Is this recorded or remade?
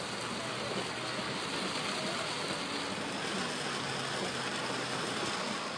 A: recorded